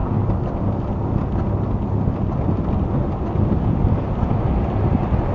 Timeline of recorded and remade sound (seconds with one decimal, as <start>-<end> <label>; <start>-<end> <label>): 0.0-5.3 recorded